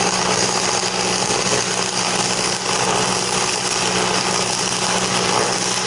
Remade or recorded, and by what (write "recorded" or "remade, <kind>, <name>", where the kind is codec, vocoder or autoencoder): recorded